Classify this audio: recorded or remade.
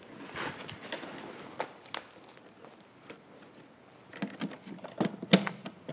recorded